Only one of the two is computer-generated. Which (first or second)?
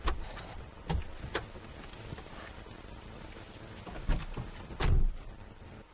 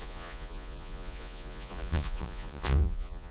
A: second